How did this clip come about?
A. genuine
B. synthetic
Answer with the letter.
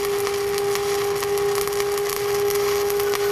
A